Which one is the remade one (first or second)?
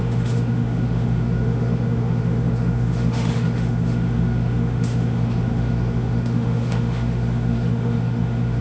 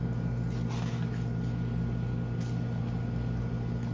first